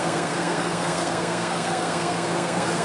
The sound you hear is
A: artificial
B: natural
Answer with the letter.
A